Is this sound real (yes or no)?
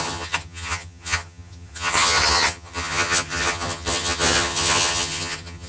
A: no